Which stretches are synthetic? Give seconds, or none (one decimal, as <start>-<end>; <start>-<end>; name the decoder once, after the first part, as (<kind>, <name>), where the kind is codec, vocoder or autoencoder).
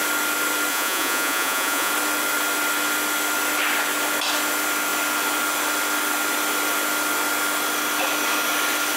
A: 0.7-1.9 (vocoder, Vocos)